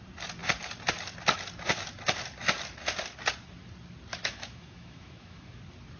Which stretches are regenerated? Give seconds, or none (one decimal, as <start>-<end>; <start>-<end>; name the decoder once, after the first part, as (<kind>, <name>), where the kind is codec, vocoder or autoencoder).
4.1-5.6 (autoencoder, DAC-VAE)